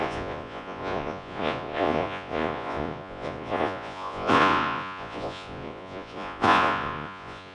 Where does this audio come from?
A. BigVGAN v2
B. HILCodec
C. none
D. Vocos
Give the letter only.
D